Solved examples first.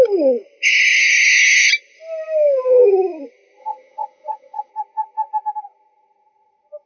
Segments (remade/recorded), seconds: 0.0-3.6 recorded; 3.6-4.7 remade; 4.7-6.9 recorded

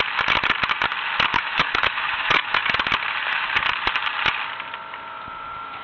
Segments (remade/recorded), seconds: 0.0-1.3 recorded; 1.3-2.8 remade; 2.8-5.8 recorded

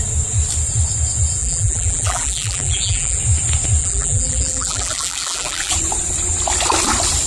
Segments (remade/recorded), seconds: 0.0-1.4 recorded; 1.4-3.2 remade; 3.2-3.8 recorded; 3.8-5.7 remade; 5.7-7.3 recorded

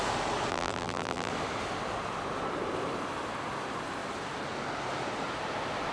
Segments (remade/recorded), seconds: 0.0-0.5 recorded; 0.5-1.3 remade; 1.3-5.9 recorded

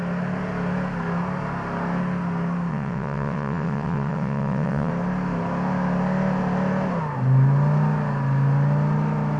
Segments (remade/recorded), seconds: 0.0-2.7 recorded; 2.7-4.9 remade; 4.9-9.4 recorded